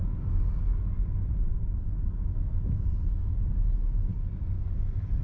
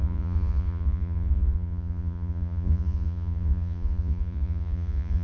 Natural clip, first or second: first